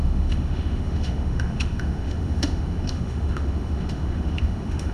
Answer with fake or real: fake